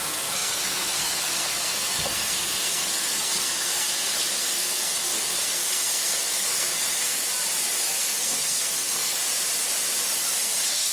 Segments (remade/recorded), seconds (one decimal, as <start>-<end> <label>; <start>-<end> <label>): 0.0-7.3 remade; 7.3-7.8 recorded; 7.8-9.2 remade; 9.2-10.3 recorded; 10.3-10.9 remade